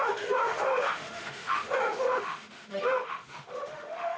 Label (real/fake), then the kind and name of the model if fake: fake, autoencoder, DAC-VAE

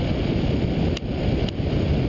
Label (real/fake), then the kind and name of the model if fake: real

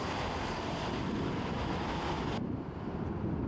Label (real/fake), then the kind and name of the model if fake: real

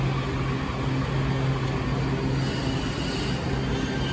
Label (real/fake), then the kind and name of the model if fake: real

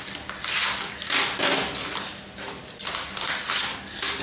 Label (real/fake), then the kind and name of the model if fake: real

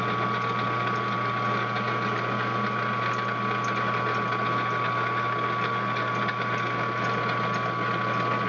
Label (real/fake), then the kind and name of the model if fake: real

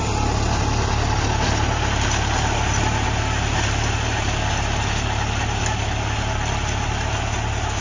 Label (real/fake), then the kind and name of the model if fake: real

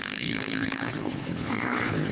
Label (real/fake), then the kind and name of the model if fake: fake, codec, HILCodec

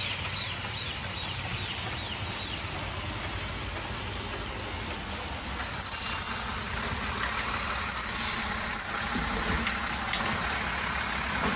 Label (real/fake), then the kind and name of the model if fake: real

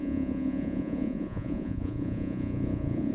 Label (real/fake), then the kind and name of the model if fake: fake, vocoder, Vocos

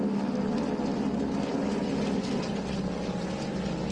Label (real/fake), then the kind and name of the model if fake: real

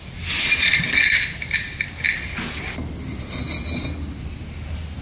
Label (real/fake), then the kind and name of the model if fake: real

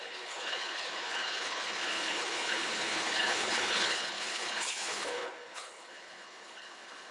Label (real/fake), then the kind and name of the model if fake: fake, codec, HILCodec